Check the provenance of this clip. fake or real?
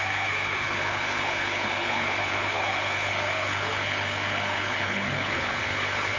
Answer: fake